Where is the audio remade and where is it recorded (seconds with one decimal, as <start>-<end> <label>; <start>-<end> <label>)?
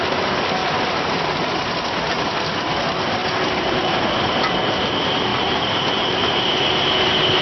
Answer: 0.0-0.6 recorded; 0.6-1.2 remade; 1.2-5.3 recorded; 5.3-6.1 remade; 6.1-7.4 recorded